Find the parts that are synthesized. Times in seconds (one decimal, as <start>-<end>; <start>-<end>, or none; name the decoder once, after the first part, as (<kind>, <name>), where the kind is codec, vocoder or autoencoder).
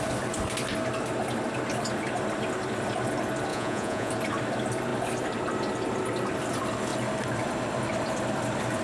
3.5-4.1 (vocoder, Vocos)